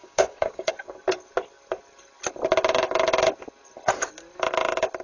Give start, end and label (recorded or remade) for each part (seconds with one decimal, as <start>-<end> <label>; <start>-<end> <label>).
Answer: 0.0-0.7 remade; 0.7-5.0 recorded